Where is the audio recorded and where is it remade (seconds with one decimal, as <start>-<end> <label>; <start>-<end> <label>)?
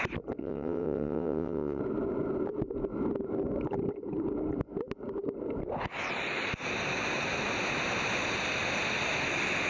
0.0-0.4 recorded; 0.4-1.8 remade; 1.8-9.7 recorded